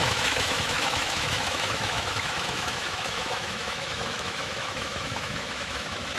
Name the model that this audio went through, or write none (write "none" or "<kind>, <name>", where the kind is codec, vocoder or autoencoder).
autoencoder, DAC-VAE